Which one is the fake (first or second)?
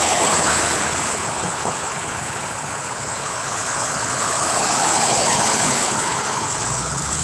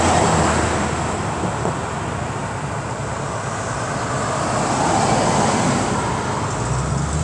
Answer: first